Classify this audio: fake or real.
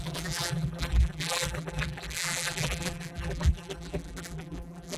fake